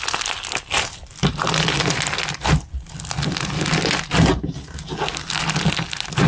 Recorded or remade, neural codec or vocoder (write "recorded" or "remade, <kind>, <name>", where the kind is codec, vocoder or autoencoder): recorded